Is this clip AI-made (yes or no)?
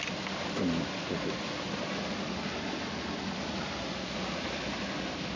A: no